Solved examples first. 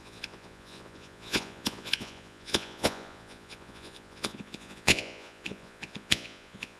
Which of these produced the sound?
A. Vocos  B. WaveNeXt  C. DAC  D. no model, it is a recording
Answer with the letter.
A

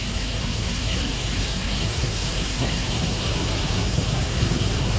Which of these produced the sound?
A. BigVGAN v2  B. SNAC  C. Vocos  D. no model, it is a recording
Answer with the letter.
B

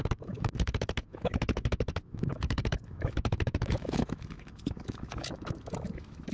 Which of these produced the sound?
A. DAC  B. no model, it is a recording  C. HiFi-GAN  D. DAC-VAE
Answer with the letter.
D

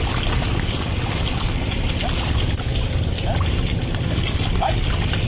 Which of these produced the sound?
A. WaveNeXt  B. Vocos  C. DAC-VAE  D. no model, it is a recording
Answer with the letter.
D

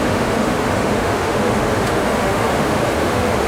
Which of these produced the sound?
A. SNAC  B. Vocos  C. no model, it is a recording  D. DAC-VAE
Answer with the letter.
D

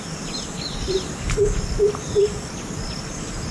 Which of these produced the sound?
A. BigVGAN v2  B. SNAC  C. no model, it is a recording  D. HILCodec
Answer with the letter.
C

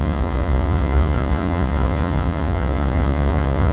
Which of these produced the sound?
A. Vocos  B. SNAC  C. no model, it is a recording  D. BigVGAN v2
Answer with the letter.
A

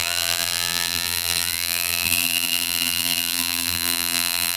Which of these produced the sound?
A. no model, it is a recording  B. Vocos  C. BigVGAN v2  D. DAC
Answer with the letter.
C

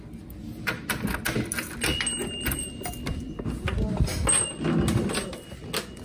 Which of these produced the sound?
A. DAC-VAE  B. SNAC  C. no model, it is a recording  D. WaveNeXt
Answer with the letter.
C